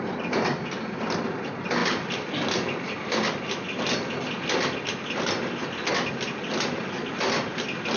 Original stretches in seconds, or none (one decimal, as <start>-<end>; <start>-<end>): 0.0-8.0